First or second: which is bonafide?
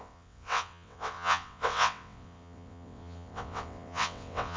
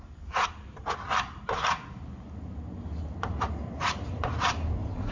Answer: second